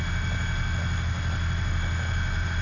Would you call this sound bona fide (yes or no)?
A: yes